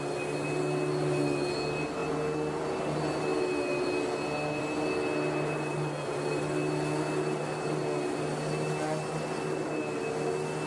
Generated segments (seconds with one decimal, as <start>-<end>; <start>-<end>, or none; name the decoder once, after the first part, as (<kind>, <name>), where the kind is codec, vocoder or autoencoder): none